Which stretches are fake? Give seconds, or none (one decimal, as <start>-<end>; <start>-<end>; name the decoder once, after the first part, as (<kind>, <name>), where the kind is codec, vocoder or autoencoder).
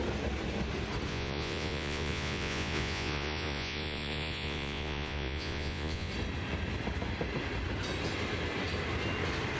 1.1-6.1 (vocoder, Vocos)